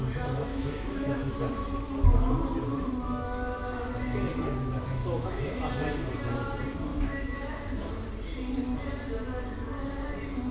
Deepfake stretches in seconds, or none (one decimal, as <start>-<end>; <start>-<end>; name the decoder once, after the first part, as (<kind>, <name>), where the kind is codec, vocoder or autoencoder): 0.5-1.3 (autoencoder, DAC-VAE); 5.0-5.6; 6.9-7.9

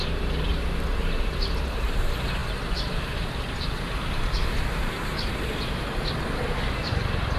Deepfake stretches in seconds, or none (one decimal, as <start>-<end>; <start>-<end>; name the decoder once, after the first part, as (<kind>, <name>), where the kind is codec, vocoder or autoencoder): 0.0-7.4 (vocoder, BigVGAN v2)

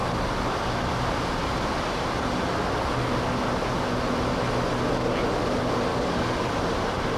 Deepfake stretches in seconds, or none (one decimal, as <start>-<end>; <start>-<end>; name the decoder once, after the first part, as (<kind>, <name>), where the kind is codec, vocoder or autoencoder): 5.9-6.5 (codec, DAC)

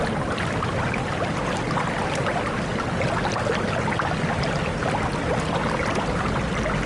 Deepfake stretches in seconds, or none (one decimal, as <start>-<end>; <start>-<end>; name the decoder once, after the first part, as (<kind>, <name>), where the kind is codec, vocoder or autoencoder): none

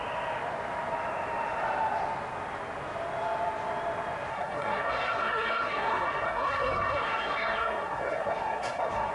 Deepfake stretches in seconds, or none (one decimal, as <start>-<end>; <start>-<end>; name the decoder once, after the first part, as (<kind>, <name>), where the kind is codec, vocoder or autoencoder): 4.3-9.1 (codec, SNAC)

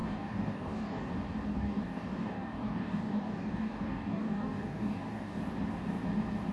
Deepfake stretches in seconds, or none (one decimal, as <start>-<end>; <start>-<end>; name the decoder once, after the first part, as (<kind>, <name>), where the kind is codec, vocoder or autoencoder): 0.0-1.1 (codec, DAC); 1.5-5.4